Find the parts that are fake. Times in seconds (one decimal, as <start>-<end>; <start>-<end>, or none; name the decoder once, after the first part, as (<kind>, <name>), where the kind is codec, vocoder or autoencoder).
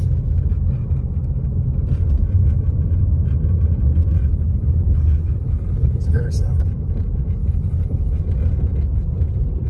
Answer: 4.2-6.3 (codec, HILCodec); 7.4-8.2